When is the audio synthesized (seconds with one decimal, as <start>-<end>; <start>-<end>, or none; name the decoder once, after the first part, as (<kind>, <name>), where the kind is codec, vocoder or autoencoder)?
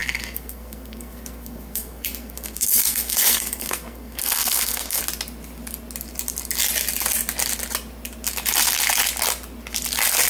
0.0-5.0 (codec, SNAC)